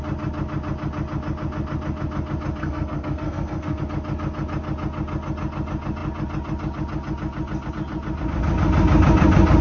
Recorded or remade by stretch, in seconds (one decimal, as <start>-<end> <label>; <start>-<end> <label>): 0.0-2.6 recorded; 2.6-3.8 remade; 3.8-9.6 recorded